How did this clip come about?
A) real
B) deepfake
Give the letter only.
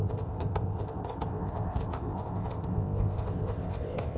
B